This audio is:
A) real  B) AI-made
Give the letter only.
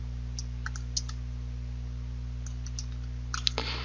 A